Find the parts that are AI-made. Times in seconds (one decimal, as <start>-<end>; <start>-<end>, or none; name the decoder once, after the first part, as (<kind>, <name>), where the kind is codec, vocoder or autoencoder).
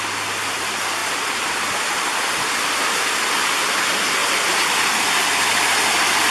none